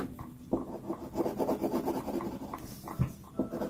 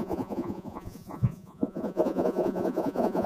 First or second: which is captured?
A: first